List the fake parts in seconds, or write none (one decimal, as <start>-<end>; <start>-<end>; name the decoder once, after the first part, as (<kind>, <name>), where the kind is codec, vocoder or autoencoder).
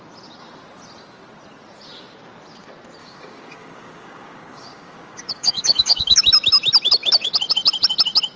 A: 3.0-6.2 (codec, DAC)